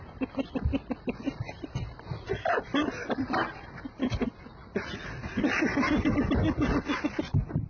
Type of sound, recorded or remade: remade